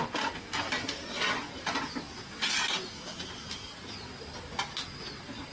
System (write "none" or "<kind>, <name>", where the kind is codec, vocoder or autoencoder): none